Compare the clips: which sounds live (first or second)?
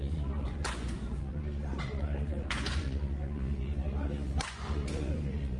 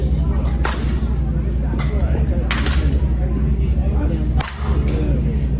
second